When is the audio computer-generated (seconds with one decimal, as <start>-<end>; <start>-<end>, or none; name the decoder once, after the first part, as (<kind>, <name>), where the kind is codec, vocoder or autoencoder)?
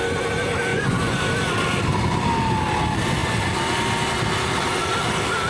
0.7-1.2 (vocoder, Vocos)